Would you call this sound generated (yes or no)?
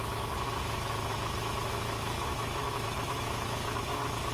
yes